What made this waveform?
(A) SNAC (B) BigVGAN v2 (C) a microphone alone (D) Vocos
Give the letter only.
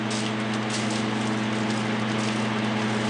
C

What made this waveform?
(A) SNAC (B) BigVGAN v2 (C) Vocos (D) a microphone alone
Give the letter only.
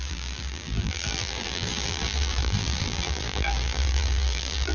B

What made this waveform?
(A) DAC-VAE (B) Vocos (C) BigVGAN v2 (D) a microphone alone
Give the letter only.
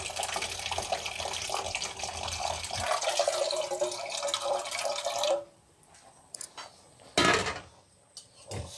D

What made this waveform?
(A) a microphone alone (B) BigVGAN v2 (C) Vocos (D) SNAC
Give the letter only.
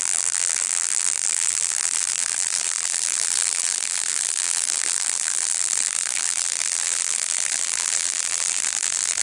B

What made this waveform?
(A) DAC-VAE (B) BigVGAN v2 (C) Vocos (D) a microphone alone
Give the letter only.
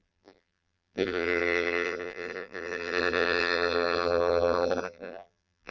B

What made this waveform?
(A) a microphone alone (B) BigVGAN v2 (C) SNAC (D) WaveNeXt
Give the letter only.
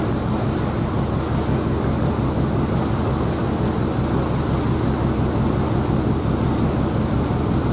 A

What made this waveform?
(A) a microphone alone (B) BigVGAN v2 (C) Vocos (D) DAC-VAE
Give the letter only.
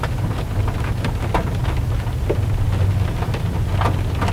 A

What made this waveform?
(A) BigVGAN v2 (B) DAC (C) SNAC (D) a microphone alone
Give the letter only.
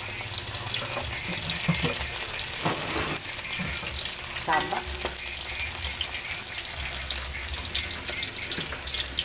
D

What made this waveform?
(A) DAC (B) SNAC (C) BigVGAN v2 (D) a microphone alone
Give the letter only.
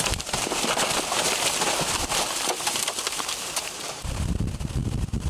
C